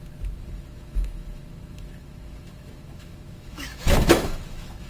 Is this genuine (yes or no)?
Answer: no